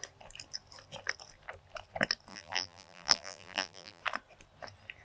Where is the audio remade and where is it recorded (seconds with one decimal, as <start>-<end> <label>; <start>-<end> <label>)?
0.0-2.3 recorded; 2.3-4.0 remade; 4.0-5.0 recorded